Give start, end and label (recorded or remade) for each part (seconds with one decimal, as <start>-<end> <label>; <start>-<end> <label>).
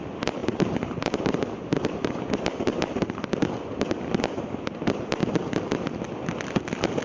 0.0-0.4 recorded; 0.4-3.3 remade; 3.3-7.0 recorded